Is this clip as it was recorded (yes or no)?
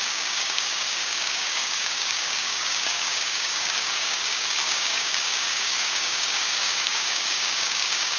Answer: no